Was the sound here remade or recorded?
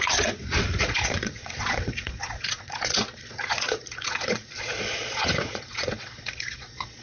remade